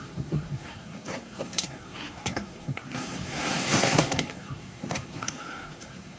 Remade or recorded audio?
remade